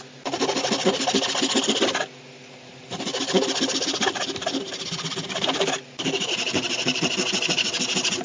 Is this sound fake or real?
real